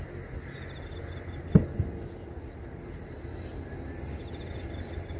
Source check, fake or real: real